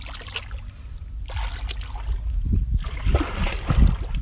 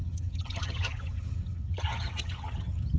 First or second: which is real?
first